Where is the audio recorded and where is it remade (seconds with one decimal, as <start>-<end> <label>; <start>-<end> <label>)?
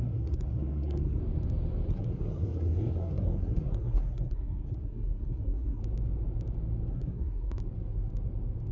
0.0-1.2 remade; 1.2-1.9 recorded; 1.9-5.8 remade; 5.8-6.9 recorded; 6.9-7.6 remade; 7.6-8.7 recorded